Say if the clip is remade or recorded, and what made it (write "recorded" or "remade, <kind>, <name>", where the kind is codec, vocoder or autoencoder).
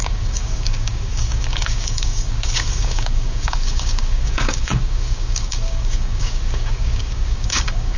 remade, codec, DAC